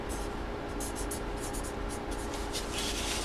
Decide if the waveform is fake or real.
real